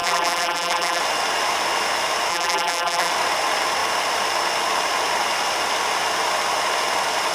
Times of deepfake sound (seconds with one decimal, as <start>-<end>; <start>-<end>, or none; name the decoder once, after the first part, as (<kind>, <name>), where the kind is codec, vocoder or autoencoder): 0.0-1.0 (vocoder, BigVGAN v2); 2.3-3.1